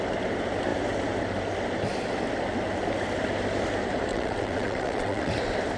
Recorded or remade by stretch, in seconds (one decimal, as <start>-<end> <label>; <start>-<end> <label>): 0.0-4.1 recorded; 4.1-5.3 remade; 5.3-5.8 recorded